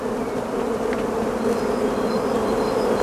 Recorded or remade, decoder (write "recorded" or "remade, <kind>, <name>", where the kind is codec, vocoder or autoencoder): recorded